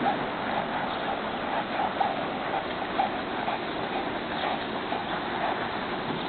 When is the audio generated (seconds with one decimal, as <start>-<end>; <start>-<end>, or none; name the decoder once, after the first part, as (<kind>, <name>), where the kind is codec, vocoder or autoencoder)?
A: none